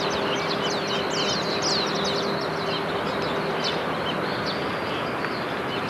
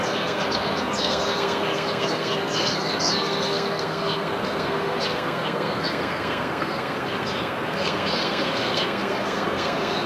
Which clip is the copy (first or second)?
second